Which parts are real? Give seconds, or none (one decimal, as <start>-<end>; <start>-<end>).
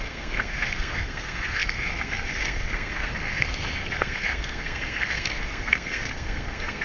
none